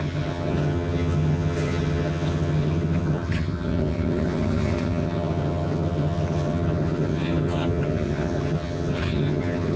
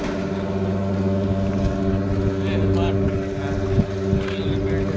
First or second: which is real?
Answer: second